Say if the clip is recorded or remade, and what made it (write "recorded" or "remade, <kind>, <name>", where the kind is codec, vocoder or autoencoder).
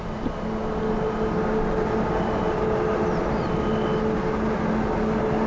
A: recorded